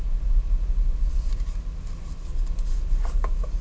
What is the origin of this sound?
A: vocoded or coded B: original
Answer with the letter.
B